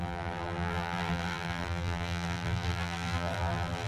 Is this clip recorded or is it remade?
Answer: remade